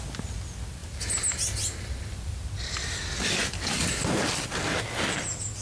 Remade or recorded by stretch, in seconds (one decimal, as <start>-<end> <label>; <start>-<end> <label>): 0.0-5.6 recorded